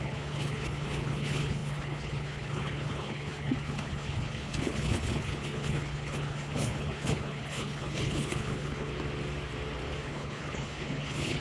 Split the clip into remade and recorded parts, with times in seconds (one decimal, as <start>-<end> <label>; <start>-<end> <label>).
0.0-8.9 remade; 8.9-10.0 recorded; 10.0-11.4 remade